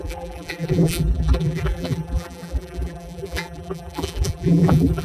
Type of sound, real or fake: fake